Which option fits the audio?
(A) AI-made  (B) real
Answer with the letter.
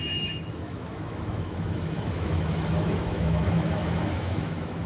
A